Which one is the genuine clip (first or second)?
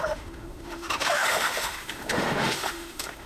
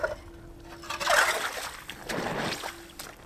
second